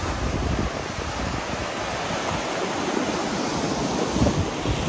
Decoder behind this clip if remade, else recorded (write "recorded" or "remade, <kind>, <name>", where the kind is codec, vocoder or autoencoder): recorded